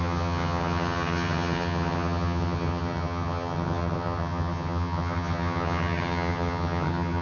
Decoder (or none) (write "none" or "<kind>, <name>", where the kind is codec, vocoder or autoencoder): vocoder, HiFi-GAN